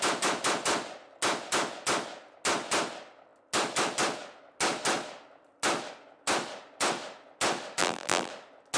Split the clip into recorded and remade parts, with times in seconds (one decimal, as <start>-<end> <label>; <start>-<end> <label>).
0.0-7.8 recorded; 7.8-8.3 remade; 8.3-8.8 recorded